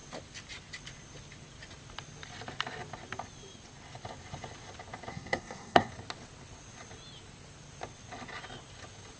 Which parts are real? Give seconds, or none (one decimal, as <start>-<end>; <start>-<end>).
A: 0.0-5.1; 5.9-9.2